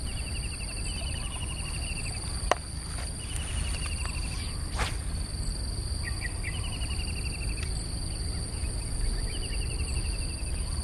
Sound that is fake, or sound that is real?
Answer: real